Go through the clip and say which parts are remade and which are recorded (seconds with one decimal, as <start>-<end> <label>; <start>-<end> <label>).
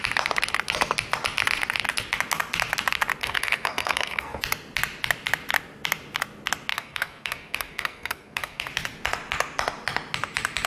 0.0-3.2 recorded; 3.2-4.4 remade; 4.4-6.7 recorded; 6.7-8.7 remade; 8.7-10.7 recorded